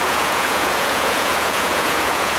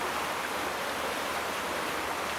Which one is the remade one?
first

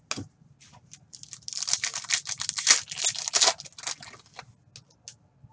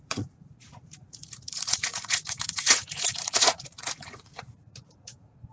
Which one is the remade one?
second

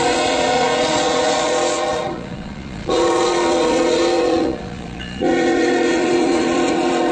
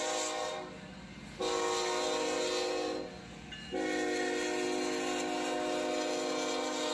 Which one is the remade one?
first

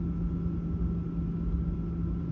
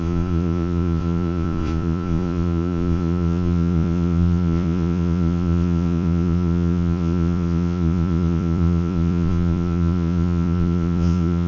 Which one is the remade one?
second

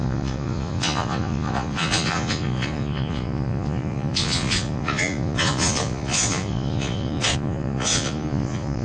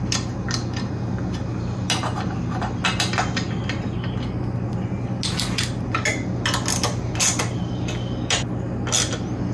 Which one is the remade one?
first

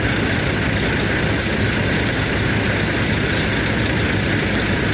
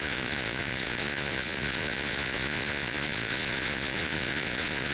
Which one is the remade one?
second